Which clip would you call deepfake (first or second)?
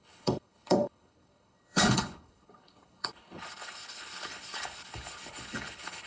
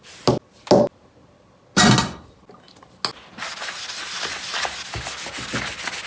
first